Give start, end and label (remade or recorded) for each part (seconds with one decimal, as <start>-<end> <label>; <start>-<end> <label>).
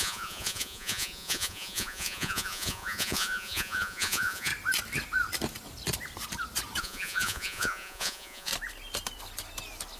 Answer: 0.0-4.5 remade; 4.5-6.8 recorded; 6.8-8.5 remade; 8.5-10.0 recorded